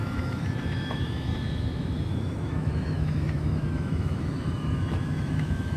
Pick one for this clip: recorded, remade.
remade